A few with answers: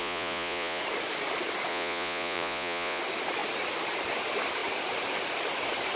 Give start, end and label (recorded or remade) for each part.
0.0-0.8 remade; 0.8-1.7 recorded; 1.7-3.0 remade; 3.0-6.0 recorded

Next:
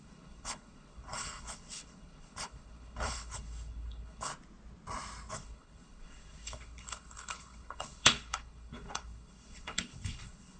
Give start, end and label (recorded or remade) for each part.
0.0-4.3 remade; 4.3-5.3 recorded; 5.3-10.6 remade

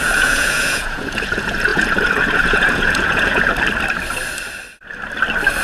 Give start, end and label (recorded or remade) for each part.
0.0-3.5 remade; 3.5-5.6 recorded

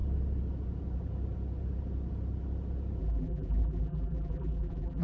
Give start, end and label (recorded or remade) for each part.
0.0-3.0 recorded; 3.0-5.0 remade

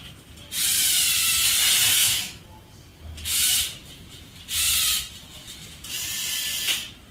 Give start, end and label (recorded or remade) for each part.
0.0-1.9 recorded; 1.9-2.4 remade; 2.4-7.1 recorded

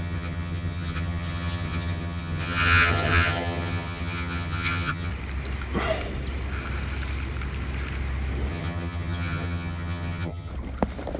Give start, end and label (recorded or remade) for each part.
0.0-5.1 remade; 5.1-8.5 recorded; 8.5-10.5 remade; 10.5-11.2 recorded

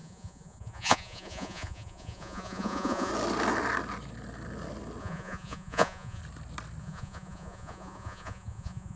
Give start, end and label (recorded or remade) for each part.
0.0-3.1 remade; 3.1-5.0 recorded; 5.0-6.2 remade; 6.2-6.8 recorded; 6.8-9.0 remade

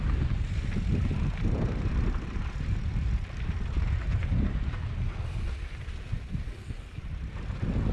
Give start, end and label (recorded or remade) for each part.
0.0-4.2 remade; 4.2-7.3 recorded; 7.3-7.9 remade